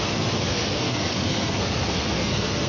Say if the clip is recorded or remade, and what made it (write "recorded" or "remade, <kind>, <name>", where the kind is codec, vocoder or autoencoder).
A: remade, codec, SNAC